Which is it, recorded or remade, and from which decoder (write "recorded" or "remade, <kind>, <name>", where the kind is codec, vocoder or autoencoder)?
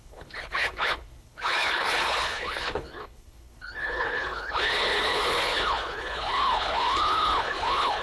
remade, codec, HILCodec